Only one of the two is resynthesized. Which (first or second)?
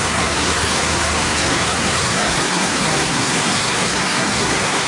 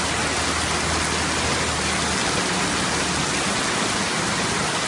first